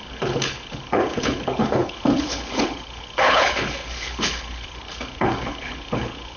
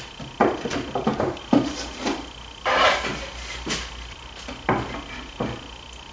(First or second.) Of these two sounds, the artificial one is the first